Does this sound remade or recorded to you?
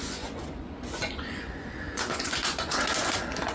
remade